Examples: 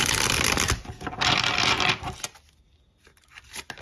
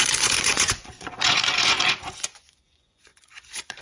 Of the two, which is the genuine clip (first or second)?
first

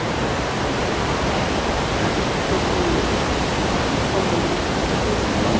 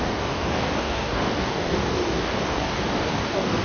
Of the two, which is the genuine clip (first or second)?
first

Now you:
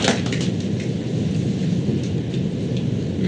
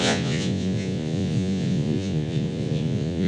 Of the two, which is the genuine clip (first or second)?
first